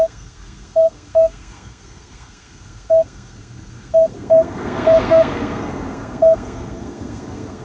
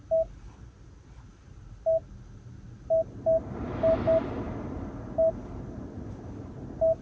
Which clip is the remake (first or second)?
first